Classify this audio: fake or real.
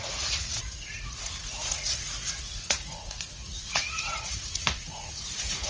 fake